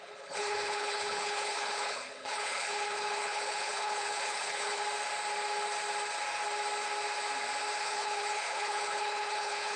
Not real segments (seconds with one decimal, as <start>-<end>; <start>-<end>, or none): 0.0-4.8; 7.8-9.8